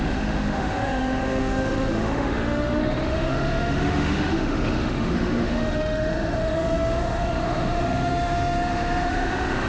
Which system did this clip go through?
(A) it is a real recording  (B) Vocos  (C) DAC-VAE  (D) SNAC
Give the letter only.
C